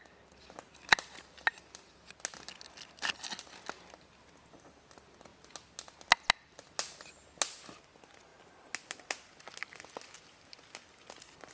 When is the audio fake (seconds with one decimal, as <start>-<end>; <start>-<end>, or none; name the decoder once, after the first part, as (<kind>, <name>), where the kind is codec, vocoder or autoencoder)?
none